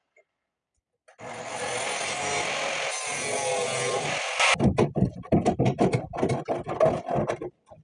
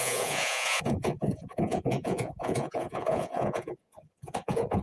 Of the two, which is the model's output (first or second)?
second